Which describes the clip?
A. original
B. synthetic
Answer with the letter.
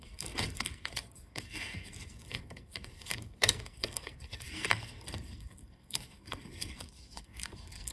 B